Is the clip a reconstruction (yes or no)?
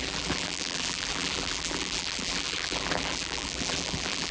yes